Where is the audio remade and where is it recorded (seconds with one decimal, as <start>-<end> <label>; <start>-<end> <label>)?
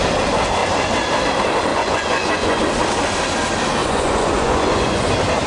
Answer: 0.0-1.7 recorded; 1.7-2.6 remade; 2.6-3.8 recorded; 3.8-5.1 remade; 5.1-5.5 recorded